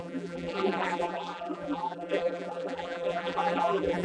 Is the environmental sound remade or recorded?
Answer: remade